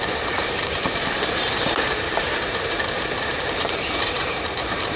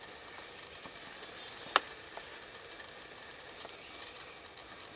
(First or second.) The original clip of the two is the second